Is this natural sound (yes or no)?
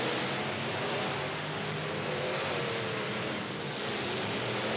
yes